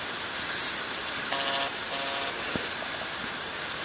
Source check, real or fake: real